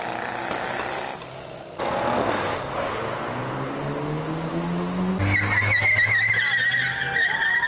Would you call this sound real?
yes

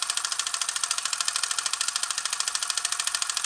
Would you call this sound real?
yes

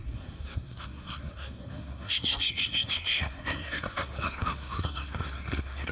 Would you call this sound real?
no